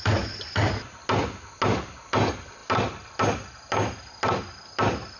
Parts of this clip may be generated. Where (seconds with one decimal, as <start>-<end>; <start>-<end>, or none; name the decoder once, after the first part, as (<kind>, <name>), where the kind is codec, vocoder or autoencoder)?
none